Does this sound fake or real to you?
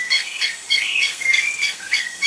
fake